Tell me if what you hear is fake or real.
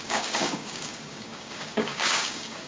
fake